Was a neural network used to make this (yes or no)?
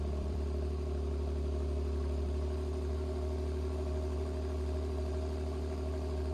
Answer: yes